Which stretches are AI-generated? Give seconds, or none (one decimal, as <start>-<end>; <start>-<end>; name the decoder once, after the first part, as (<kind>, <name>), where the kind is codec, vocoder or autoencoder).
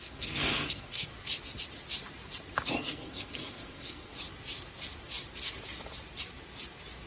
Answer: 0.0-1.1 (codec, SNAC); 2.8-4.1